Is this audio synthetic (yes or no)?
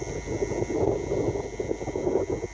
no